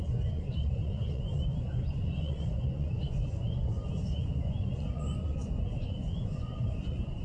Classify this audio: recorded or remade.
remade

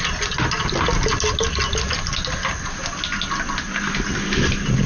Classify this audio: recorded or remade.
recorded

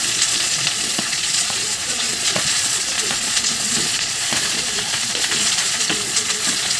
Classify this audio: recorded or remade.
remade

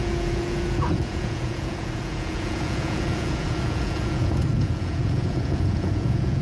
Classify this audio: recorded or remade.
remade